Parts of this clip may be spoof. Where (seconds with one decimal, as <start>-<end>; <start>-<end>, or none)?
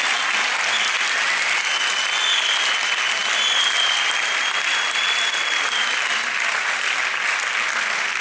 none